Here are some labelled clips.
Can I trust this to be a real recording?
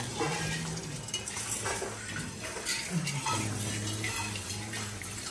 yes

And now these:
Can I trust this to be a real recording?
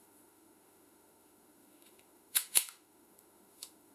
no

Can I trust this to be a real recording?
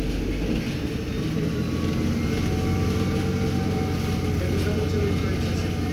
yes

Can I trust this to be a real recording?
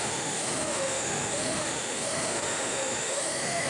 no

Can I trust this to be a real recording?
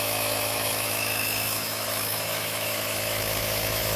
no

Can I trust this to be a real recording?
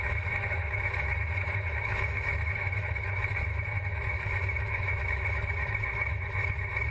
no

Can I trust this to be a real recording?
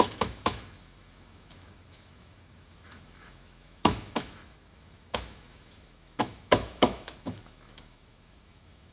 no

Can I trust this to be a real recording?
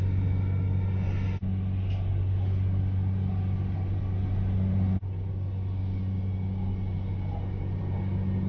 yes